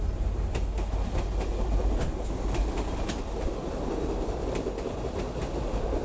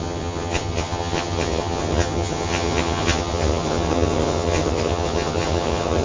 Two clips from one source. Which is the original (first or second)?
first